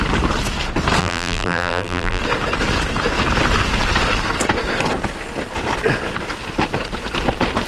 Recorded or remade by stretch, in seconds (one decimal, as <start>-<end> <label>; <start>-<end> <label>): 0.0-1.0 recorded; 1.0-2.2 remade; 2.2-7.7 recorded